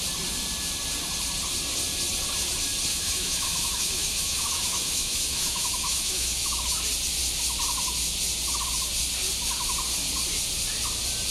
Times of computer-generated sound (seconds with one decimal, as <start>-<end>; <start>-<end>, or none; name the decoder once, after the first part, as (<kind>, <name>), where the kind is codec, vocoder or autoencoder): 2.9-6.8 (autoencoder, DAC-VAE)